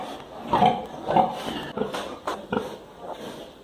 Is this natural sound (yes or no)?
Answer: yes